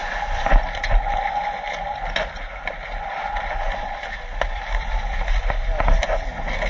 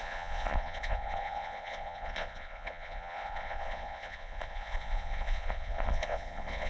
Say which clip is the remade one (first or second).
second